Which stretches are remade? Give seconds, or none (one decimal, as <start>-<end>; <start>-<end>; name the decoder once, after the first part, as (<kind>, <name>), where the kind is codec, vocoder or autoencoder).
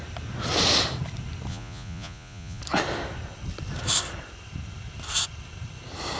1.5-2.6 (vocoder, Vocos)